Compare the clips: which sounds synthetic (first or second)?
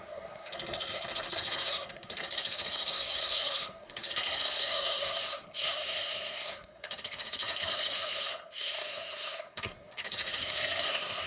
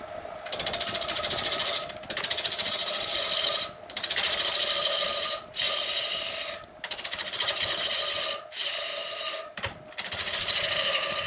first